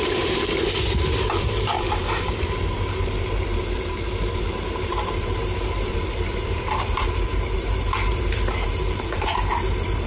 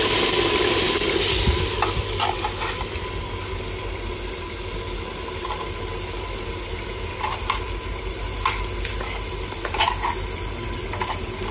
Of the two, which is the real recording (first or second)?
second